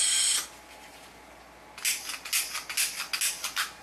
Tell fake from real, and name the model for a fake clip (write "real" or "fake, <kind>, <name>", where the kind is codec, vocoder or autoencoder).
real